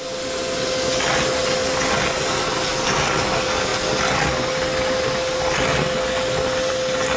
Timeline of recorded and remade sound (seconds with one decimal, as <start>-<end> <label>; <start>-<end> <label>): 0.0-7.2 recorded